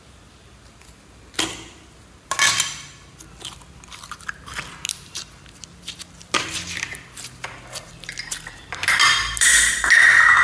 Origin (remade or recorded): recorded